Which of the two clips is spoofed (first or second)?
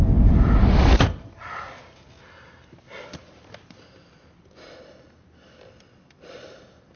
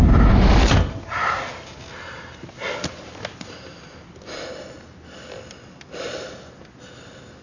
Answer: first